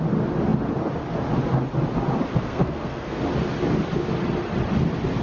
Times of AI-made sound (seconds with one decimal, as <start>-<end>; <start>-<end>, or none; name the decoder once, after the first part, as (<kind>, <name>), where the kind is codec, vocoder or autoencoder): 2.3-3.2 (codec, SNAC)